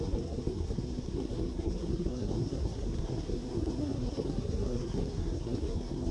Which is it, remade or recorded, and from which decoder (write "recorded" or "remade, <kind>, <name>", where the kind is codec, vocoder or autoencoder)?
remade, codec, SNAC